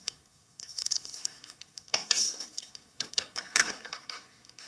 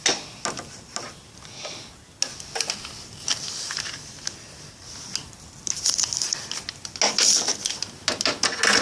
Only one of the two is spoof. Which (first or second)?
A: first